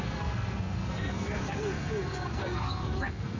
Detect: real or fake fake